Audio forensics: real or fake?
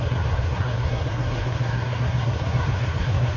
fake